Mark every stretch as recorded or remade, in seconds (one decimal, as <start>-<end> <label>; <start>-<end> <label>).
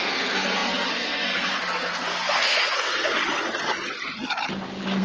0.0-3.2 remade; 3.2-5.0 recorded